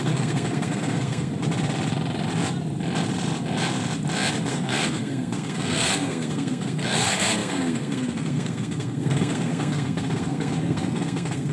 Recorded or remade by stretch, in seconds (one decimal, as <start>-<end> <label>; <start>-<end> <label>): 0.0-1.3 remade; 1.3-4.5 recorded; 4.5-11.5 remade

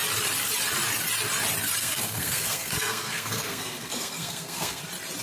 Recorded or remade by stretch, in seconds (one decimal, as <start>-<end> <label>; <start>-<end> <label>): 0.0-1.8 recorded; 1.8-4.8 remade; 4.8-5.2 recorded